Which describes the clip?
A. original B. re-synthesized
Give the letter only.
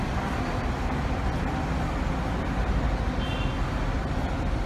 A